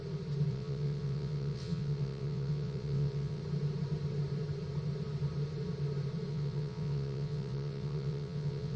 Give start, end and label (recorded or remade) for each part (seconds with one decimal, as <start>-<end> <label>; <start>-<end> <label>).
0.0-0.5 recorded; 0.5-3.4 remade; 3.4-6.3 recorded; 6.3-8.8 remade